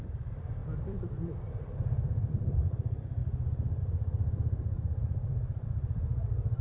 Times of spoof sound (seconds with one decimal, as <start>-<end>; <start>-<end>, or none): 0.0-3.2; 3.8-6.6